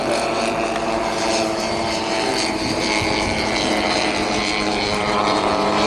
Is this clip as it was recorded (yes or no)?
no